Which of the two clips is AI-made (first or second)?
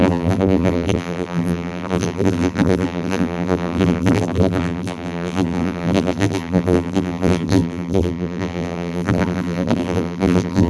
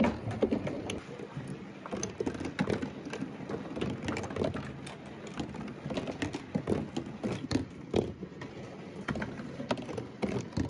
first